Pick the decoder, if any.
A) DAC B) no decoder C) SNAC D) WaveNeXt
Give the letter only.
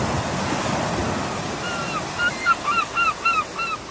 B